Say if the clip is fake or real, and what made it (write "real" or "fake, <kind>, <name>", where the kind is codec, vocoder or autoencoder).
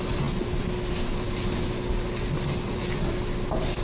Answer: real